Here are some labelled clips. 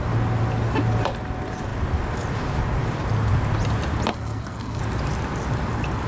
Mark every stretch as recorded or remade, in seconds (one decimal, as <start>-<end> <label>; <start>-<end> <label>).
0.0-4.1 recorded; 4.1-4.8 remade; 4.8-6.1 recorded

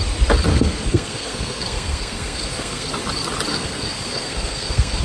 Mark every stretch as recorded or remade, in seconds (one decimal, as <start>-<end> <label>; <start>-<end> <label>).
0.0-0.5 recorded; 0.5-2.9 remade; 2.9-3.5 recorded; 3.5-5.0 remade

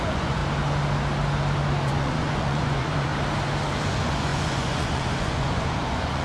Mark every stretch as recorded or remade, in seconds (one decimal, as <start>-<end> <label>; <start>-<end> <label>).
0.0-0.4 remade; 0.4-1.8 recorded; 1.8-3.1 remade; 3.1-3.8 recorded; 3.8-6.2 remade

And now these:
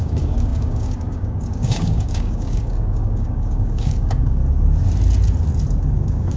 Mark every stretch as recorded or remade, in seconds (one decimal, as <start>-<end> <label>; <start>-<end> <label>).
0.0-4.4 remade; 4.4-5.9 recorded; 5.9-6.4 remade

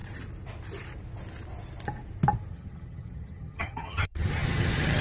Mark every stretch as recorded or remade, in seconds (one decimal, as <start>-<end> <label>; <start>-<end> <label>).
0.0-2.5 recorded; 2.5-5.0 remade

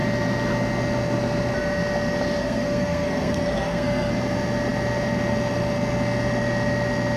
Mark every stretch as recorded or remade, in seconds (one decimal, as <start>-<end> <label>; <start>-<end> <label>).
0.0-2.4 recorded; 2.4-4.1 remade; 4.1-7.2 recorded